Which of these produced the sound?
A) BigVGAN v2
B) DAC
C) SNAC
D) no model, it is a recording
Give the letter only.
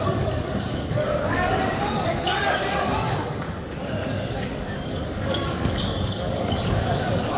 B